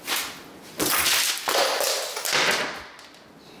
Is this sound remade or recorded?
recorded